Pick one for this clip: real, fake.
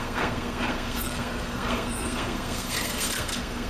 fake